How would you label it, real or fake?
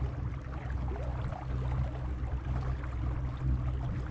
real